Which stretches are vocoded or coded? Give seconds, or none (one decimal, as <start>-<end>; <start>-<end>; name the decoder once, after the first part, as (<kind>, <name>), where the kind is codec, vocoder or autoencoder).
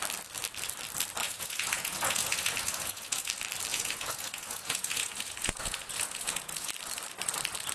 1.2-3.3 (vocoder, Vocos); 3.7-6.7